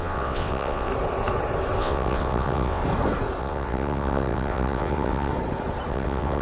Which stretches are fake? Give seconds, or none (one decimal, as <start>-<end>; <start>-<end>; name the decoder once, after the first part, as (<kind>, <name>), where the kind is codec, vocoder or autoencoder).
0.0-0.9 (vocoder, WaveNeXt); 1.8-2.8; 3.4-5.3; 5.9-6.4